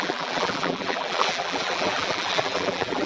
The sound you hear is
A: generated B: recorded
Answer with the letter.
A